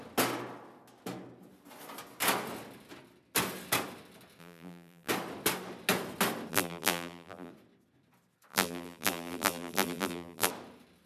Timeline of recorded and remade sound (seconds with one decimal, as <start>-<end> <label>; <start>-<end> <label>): 0.0-4.4 recorded; 4.4-5.1 remade; 5.1-6.5 recorded; 6.5-7.5 remade; 7.5-8.5 recorded; 8.5-10.5 remade; 10.5-11.1 recorded